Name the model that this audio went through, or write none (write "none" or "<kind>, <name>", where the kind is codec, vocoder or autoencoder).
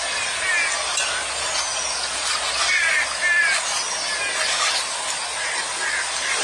none